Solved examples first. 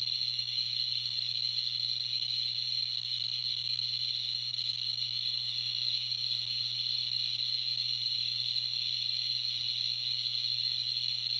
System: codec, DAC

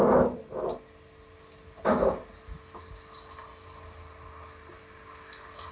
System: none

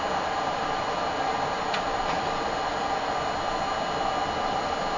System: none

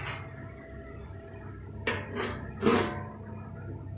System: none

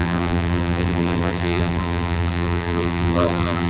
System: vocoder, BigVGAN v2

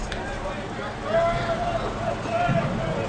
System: none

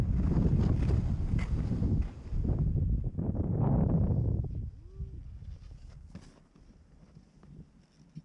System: none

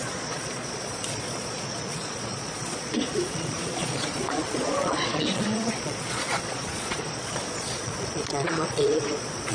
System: vocoder, Vocos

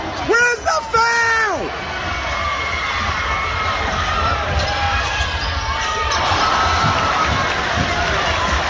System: none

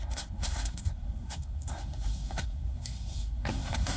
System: codec, SNAC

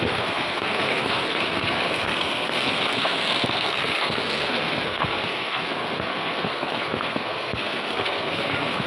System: codec, SNAC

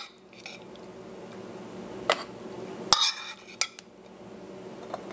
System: none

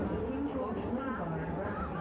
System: vocoder, BigVGAN v2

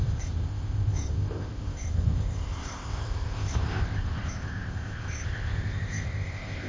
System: codec, ZipCodec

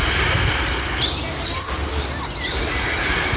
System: none